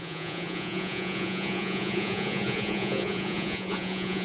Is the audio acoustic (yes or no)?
no